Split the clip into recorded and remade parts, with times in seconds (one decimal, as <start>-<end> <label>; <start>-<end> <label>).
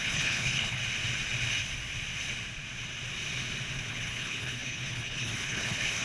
0.0-0.8 remade; 0.8-3.9 recorded; 3.9-6.0 remade